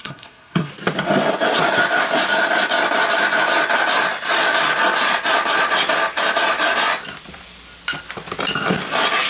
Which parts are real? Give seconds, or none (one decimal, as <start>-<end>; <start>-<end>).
0.7-9.3